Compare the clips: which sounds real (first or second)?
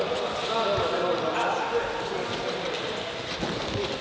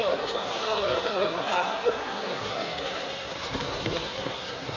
first